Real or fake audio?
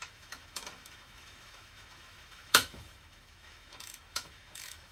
fake